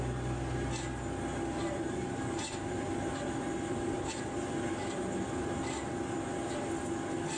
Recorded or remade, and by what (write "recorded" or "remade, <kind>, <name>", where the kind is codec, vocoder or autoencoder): recorded